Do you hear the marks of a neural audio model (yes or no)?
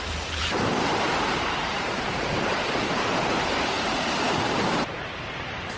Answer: yes